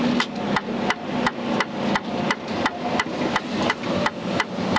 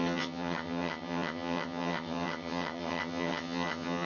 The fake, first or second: second